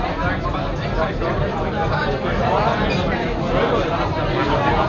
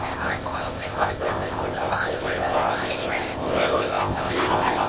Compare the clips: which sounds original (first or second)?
first